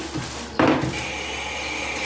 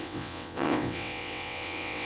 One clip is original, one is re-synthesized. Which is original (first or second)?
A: first